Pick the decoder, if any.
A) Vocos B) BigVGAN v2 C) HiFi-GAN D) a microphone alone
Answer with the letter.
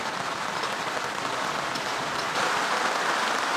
D